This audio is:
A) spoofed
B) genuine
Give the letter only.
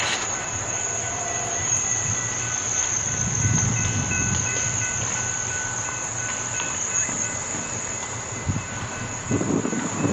A